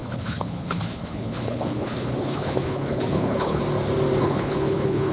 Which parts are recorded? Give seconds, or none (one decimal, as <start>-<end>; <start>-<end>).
3.6-4.2